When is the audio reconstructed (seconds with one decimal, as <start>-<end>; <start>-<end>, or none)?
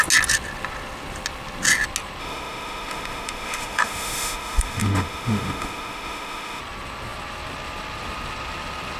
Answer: 2.2-6.6